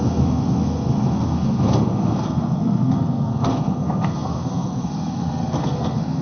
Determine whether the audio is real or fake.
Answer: fake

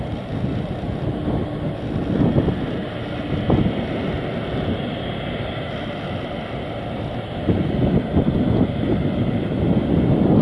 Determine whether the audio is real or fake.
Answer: real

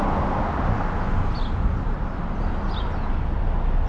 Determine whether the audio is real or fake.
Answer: real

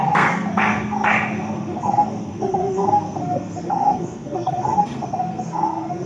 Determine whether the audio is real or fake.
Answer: fake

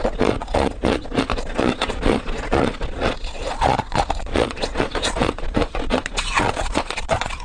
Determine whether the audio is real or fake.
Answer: fake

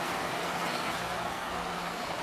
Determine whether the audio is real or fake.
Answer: fake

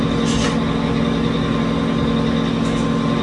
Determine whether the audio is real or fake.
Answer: real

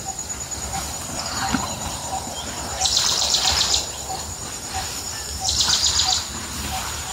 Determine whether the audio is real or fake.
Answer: fake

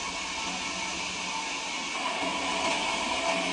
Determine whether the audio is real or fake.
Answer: real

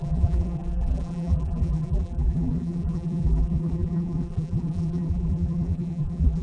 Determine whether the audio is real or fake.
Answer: fake